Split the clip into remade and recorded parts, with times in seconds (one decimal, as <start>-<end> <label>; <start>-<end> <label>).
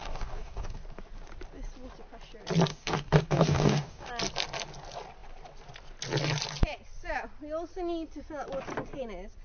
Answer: 0.0-0.8 remade; 0.8-2.7 recorded; 2.7-4.1 remade; 4.1-9.4 recorded